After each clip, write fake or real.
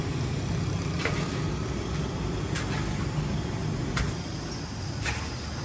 real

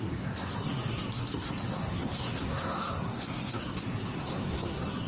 fake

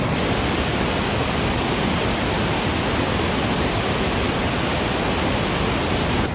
real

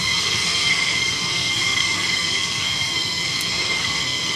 fake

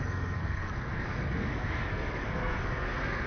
fake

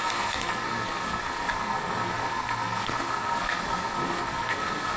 fake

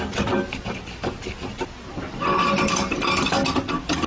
real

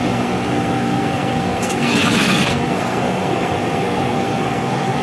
fake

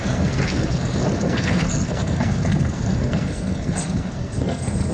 fake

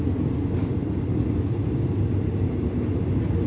real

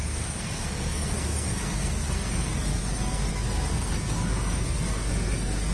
fake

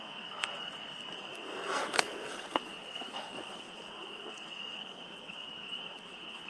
fake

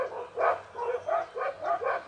real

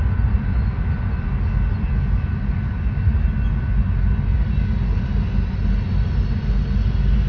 real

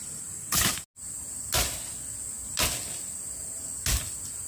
real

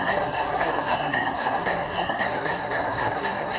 fake